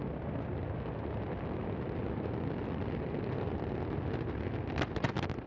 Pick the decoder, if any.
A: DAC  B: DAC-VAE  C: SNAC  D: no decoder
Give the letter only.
D